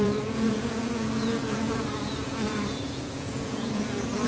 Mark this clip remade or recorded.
remade